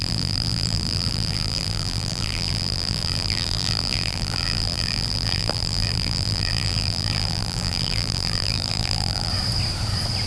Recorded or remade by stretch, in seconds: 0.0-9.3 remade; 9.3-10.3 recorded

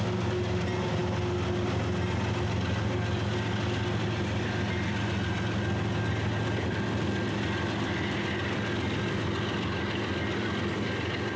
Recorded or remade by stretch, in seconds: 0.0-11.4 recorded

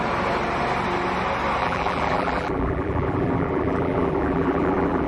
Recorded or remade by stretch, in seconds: 0.0-1.6 recorded; 1.6-5.1 remade